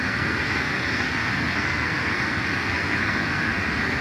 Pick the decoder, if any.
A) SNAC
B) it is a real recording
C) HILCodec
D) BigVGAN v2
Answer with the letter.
A